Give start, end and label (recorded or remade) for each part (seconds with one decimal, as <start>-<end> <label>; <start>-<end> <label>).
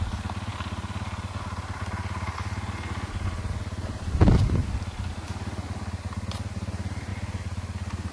0.0-8.1 recorded